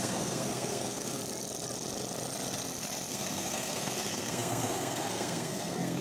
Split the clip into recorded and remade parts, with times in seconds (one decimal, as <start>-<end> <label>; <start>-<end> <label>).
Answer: 0.0-1.2 remade; 1.2-3.1 recorded; 3.1-6.0 remade